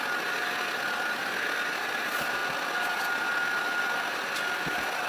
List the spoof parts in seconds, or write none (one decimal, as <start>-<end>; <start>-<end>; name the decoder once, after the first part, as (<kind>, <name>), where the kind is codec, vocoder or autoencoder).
none